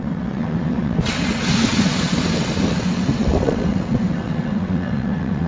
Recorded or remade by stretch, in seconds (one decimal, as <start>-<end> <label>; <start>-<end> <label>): 0.0-5.5 remade